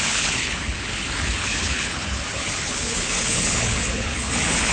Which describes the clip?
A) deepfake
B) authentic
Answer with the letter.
A